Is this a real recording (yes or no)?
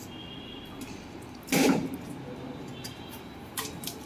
yes